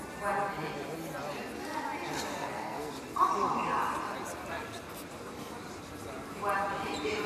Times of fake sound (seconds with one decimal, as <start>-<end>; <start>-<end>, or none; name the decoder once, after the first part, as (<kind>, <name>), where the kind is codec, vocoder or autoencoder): 2.3-2.9 (codec, SNAC)